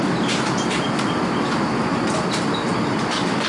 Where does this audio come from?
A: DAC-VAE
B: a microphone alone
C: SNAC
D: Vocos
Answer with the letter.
B